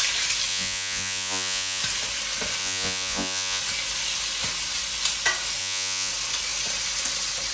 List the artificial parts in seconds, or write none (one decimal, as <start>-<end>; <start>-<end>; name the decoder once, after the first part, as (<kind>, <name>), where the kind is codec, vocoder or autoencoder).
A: 0.5-1.8 (vocoder, Vocos); 2.6-3.6; 5.6-6.1